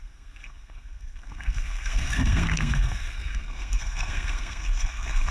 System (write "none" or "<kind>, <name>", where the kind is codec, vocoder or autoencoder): codec, SNAC